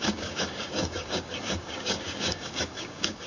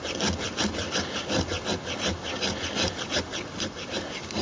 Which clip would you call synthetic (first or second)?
first